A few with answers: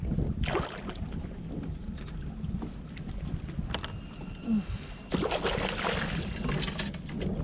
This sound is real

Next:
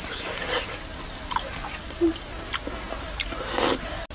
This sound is real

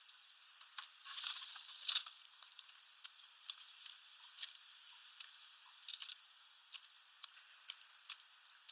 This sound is fake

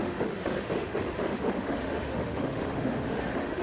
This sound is fake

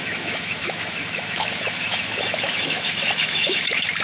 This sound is fake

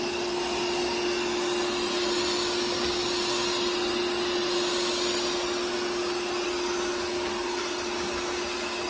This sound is real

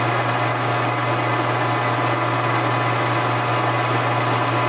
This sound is real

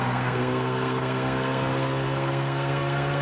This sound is fake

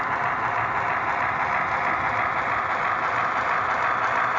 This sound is real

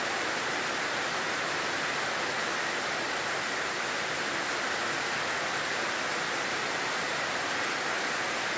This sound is real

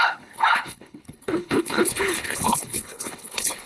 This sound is fake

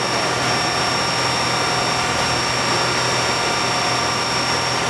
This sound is real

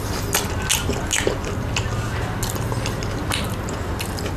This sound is real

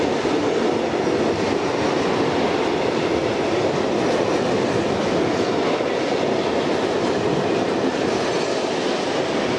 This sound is real